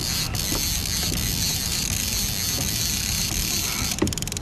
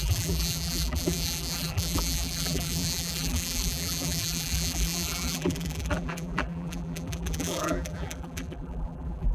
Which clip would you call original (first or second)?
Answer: first